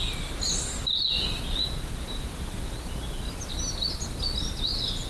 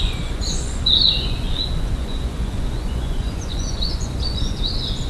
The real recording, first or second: first